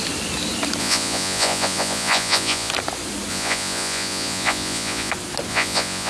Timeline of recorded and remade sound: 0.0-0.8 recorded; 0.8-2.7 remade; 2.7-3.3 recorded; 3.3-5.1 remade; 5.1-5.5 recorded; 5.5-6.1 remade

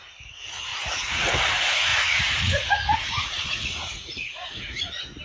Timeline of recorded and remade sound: 0.0-0.7 recorded; 0.7-1.3 remade; 1.3-1.9 recorded; 1.9-4.8 remade; 4.8-5.2 recorded

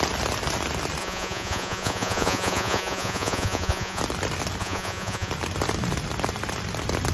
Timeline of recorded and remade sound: 0.0-1.0 recorded; 1.0-4.0 remade; 4.0-4.6 recorded; 4.6-5.3 remade; 5.3-7.1 recorded

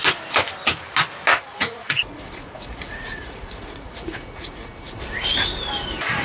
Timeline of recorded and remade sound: 0.0-1.3 recorded; 1.3-5.0 remade; 5.0-6.2 recorded

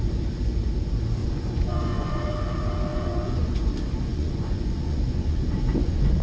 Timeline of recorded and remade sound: 0.0-1.2 recorded; 1.2-2.3 remade; 2.3-2.9 recorded; 2.9-6.2 remade

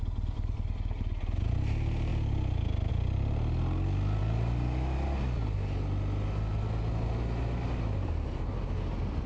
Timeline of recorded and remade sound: 0.0-9.3 recorded